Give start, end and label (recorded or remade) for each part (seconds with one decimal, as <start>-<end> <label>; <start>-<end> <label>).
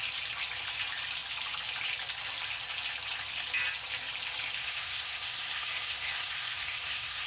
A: 0.0-4.6 recorded; 4.6-7.3 remade